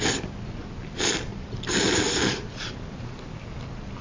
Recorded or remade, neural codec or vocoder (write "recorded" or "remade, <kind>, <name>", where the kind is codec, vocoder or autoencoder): recorded